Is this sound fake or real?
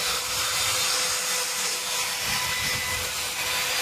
real